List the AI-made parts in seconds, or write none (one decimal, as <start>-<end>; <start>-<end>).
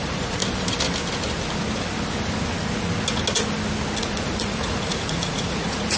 0.0-0.4; 4.0-6.0